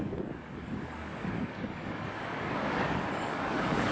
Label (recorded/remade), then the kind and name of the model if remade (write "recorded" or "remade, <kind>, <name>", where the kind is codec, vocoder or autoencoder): remade, codec, DAC